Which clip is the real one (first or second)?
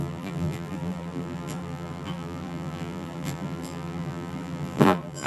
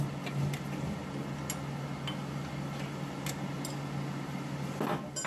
second